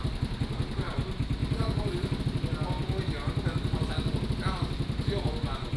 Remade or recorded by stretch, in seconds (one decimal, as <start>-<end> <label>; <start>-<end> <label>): 0.0-5.8 recorded

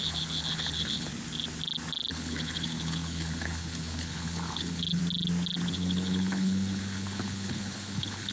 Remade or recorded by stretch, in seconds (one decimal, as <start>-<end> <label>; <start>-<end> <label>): 0.0-1.1 remade; 1.1-2.1 recorded; 2.1-5.0 remade; 5.0-5.7 recorded; 5.7-8.3 remade

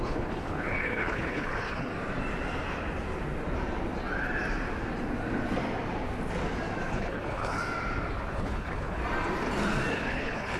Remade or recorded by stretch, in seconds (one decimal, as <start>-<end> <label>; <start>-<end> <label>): 0.0-1.9 remade; 1.9-6.9 recorded; 6.9-7.6 remade; 7.6-8.2 recorded; 8.2-9.0 remade; 9.0-9.9 recorded; 9.9-10.6 remade

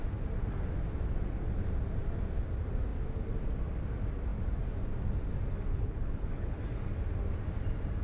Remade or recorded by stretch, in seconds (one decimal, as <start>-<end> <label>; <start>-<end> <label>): 0.0-5.7 recorded; 5.7-6.6 remade; 6.6-8.0 recorded

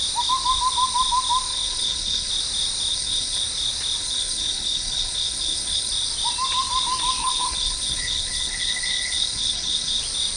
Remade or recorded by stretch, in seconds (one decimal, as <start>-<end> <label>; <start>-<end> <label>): 0.0-1.5 recorded; 1.5-2.3 remade; 2.3-2.9 recorded; 2.9-3.4 remade; 3.4-4.0 recorded; 4.0-5.9 remade; 5.9-7.2 recorded; 7.2-10.0 remade; 10.0-10.4 recorded